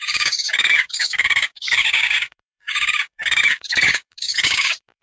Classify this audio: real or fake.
fake